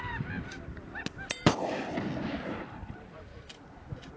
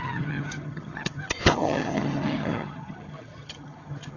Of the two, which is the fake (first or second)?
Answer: second